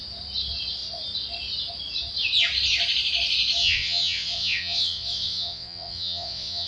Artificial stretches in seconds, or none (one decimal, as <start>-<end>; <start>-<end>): 3.6-6.7